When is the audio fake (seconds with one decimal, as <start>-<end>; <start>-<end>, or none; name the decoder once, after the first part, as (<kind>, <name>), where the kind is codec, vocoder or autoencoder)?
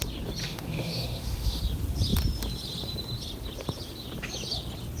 0.4-1.6 (autoencoder, DAC-VAE)